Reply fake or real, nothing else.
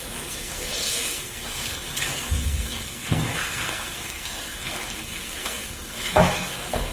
fake